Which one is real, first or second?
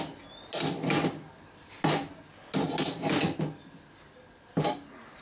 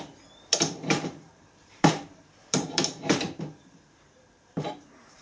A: first